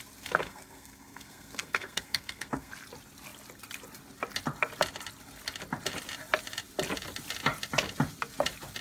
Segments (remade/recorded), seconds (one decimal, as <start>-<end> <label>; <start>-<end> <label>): 0.0-0.4 recorded; 0.4-2.7 remade; 2.7-8.8 recorded